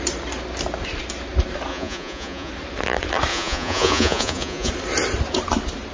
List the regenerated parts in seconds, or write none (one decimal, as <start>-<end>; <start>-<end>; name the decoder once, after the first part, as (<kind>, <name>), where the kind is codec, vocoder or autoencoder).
1.7-2.5 (vocoder, Vocos); 3.3-4.7